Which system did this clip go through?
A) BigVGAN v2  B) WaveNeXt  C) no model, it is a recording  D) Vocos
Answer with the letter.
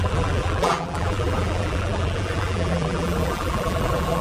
A